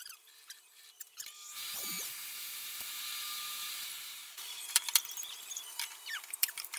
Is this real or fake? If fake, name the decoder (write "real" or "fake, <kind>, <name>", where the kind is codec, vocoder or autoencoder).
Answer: fake, vocoder, BigVGAN v2